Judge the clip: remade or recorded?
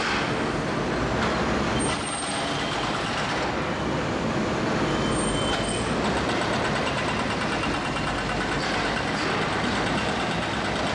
recorded